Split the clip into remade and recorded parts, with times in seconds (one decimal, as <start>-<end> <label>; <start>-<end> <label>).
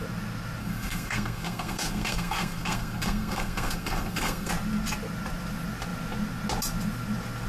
0.0-0.6 recorded; 0.6-4.5 remade; 4.5-7.5 recorded